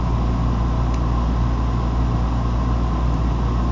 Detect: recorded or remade recorded